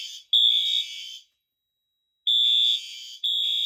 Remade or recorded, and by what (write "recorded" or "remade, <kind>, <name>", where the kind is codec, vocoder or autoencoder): recorded